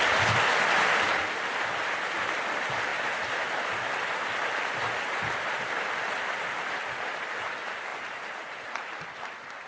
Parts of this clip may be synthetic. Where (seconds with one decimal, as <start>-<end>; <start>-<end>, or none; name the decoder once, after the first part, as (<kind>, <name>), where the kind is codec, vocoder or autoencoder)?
none